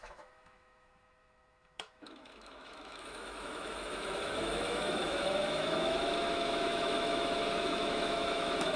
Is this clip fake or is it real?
fake